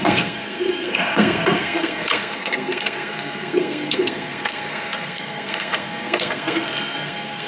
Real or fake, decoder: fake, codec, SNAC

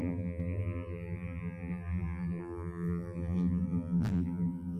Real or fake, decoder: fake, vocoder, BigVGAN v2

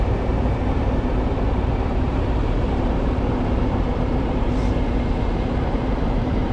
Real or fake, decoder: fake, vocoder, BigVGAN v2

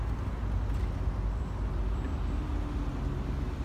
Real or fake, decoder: real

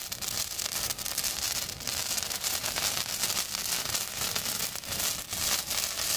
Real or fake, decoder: real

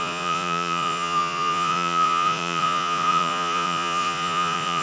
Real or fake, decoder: fake, vocoder, Vocos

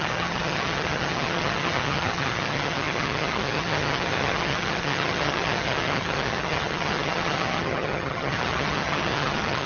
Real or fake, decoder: fake, vocoder, HiFi-GAN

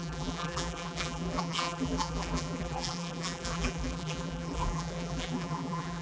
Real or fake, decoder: fake, vocoder, BigVGAN v2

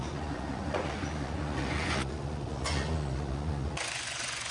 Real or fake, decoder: fake, vocoder, Vocos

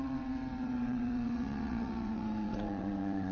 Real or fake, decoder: fake, vocoder, WaveNeXt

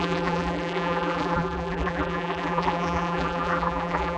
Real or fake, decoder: fake, vocoder, BigVGAN v2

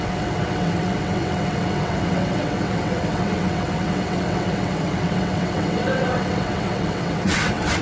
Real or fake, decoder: fake, vocoder, WaveNeXt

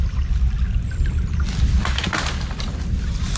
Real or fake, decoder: real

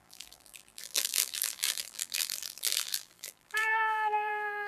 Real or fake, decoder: fake, vocoder, BigVGAN v2